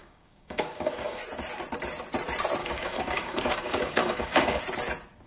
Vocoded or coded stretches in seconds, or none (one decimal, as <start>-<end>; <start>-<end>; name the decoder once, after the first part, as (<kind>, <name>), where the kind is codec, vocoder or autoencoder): 0.0-1.2 (codec, DAC); 2.6-4.6